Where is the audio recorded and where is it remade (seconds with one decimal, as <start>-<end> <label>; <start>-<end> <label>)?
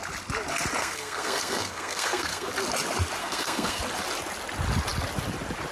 0.0-0.8 recorded; 0.8-2.5 remade; 2.5-3.2 recorded; 3.2-3.8 remade; 3.8-5.7 recorded